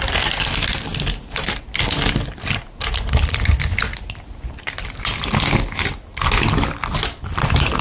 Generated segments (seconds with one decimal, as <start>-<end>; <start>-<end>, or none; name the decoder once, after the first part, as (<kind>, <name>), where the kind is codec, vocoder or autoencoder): none